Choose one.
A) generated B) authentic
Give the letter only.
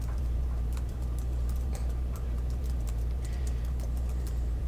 A